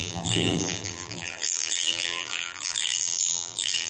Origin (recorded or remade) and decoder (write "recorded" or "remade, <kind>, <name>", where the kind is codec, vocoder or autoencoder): remade, vocoder, BigVGAN v2